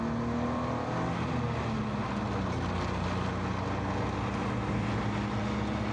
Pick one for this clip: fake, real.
real